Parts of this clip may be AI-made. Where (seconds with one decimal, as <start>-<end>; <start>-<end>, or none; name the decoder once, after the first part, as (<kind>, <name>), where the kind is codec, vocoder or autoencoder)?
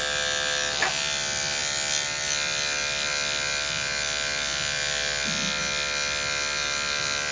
none